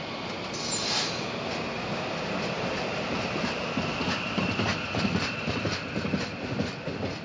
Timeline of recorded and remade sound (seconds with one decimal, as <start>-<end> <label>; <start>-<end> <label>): 0.0-7.2 recorded

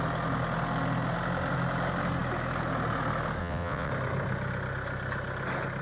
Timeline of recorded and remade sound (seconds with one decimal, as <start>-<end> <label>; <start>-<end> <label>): 0.0-3.4 recorded; 3.4-3.9 remade; 3.9-5.8 recorded

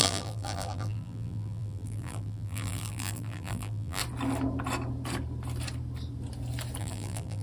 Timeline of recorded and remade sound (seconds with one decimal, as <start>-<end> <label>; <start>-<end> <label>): 0.0-4.0 remade; 4.0-6.8 recorded; 6.8-7.4 remade

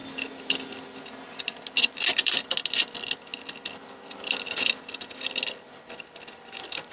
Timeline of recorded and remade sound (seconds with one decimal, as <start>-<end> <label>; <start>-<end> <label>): 0.0-6.9 recorded

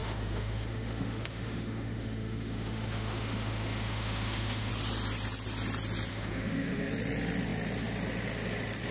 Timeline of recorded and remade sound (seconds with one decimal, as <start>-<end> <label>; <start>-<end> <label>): 0.0-4.7 remade; 4.7-6.1 recorded; 6.1-6.9 remade; 6.9-8.9 recorded

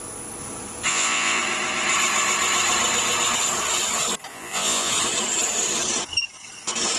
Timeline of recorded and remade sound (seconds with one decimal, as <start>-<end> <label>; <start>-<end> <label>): 0.0-0.9 recorded; 0.9-1.4 remade; 1.4-4.3 recorded; 4.3-4.9 remade; 4.9-7.0 recorded